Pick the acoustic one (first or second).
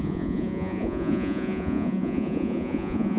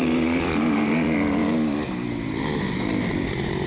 second